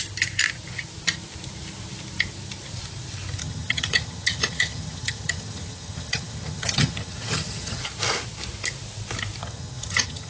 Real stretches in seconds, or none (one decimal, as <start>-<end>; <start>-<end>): 0.0-3.4; 7.8-9.4